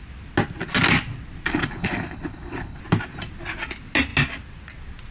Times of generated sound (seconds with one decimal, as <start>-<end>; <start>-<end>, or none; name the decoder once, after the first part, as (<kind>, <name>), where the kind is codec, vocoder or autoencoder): 1.5-2.8 (codec, HILCodec)